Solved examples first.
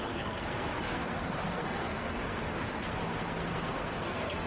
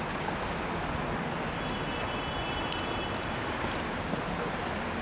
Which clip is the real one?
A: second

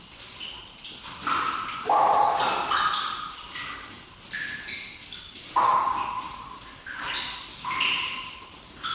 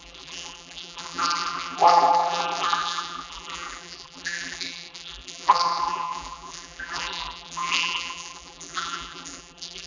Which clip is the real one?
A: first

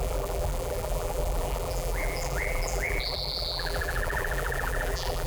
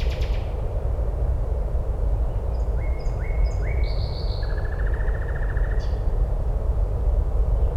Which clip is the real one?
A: second